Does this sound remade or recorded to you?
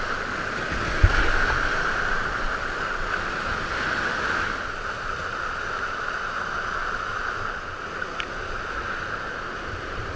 recorded